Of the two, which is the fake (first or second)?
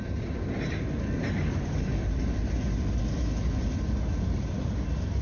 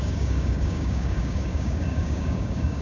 second